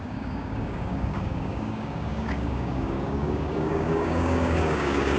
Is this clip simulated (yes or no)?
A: yes